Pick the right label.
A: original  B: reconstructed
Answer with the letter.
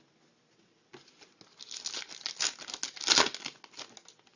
A